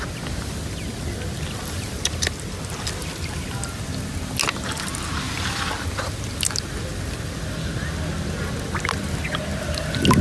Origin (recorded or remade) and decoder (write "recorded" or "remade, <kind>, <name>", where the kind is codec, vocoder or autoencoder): recorded